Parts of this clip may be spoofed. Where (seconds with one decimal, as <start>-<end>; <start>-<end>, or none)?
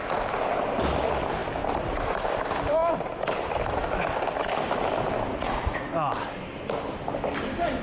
5.3-5.9